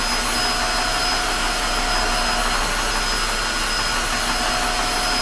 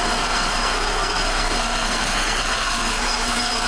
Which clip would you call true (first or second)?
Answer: first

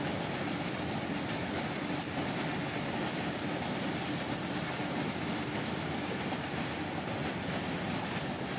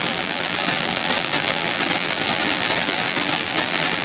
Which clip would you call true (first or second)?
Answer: first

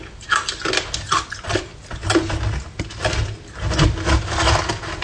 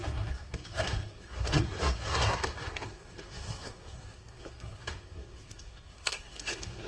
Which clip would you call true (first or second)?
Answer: first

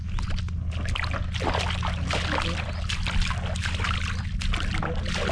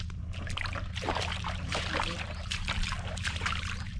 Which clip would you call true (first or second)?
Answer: first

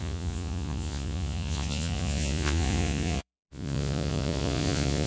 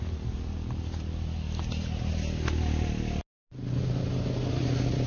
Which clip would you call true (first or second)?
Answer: second